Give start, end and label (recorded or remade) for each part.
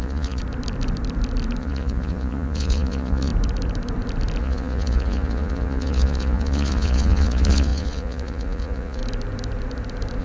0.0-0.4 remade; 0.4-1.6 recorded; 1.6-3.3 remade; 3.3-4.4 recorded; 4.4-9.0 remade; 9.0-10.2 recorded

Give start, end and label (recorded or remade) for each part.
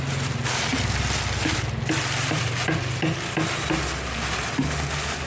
0.0-5.3 recorded